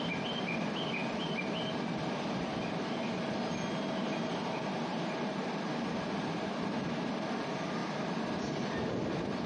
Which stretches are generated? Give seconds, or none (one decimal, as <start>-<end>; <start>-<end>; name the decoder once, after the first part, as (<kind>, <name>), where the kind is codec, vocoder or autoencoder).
4.3-5.4 (vocoder, BigVGAN v2)